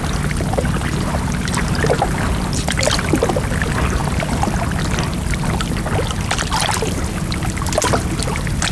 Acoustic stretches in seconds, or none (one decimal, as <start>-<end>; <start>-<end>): 0.0-8.7